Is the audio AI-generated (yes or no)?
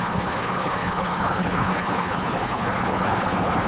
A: yes